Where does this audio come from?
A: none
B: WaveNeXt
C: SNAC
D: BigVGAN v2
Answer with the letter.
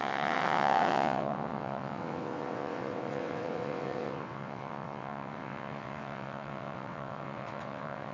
B